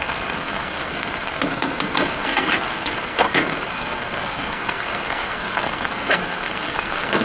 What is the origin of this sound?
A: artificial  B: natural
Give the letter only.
A